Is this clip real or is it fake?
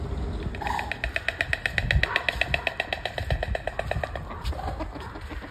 real